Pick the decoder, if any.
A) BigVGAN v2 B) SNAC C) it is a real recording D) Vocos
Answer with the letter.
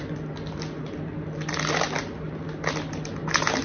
C